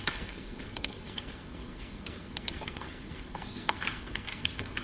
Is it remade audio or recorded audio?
remade